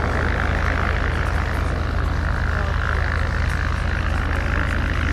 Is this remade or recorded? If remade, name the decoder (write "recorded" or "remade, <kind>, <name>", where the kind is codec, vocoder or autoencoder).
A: recorded